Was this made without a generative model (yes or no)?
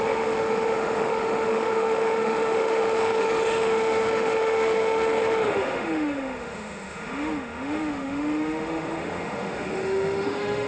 no